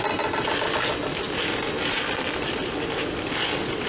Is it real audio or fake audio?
real